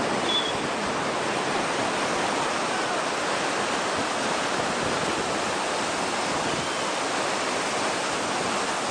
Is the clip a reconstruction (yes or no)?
no